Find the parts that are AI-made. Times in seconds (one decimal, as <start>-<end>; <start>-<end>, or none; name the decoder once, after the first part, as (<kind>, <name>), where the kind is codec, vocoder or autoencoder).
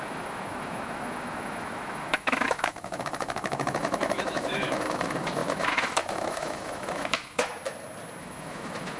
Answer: 0.0-7.5 (autoencoder, DAC-VAE); 8.2-9.0